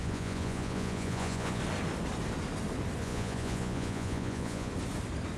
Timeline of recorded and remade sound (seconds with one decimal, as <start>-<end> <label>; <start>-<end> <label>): 0.0-1.6 remade; 1.6-3.0 recorded; 3.0-4.7 remade; 4.7-5.4 recorded